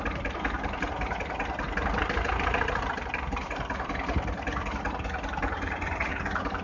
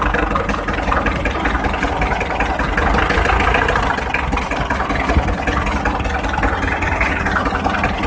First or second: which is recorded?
second